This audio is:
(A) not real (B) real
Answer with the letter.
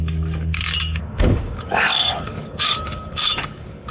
A